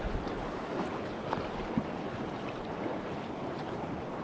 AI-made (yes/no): no